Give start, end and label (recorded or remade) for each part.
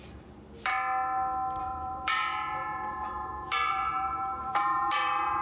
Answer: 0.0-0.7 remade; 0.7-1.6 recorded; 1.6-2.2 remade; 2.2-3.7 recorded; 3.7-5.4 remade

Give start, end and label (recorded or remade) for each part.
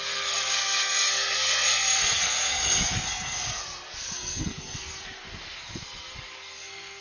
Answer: 0.0-7.0 remade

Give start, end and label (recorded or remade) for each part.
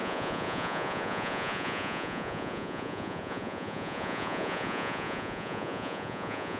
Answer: 0.0-6.6 remade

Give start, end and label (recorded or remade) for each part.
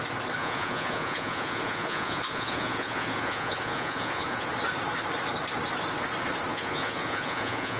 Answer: 0.0-0.4 recorded; 0.4-4.5 remade; 4.5-6.5 recorded; 6.5-7.8 remade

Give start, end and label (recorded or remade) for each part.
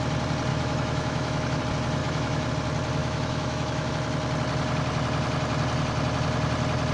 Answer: 0.0-0.5 recorded; 0.5-1.6 remade; 1.6-2.0 recorded; 2.0-2.5 remade; 2.5-3.0 recorded; 3.0-3.9 remade; 3.9-6.9 recorded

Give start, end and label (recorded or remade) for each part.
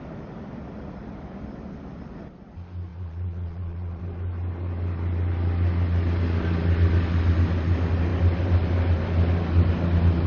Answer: 0.0-2.9 recorded; 2.9-4.0 remade; 4.0-10.3 recorded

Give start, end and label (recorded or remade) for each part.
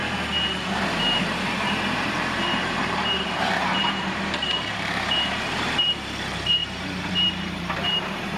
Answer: 0.0-0.7 recorded; 0.7-8.4 remade